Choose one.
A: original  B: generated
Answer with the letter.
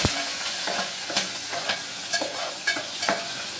B